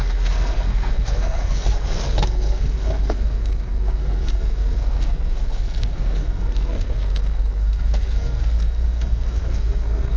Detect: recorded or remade remade